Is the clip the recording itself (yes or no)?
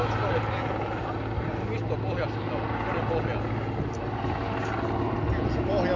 yes